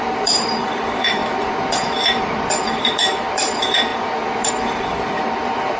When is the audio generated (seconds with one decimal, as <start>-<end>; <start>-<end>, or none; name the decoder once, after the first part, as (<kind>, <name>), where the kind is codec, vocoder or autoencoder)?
0.0-5.8 (vocoder, BigVGAN v2)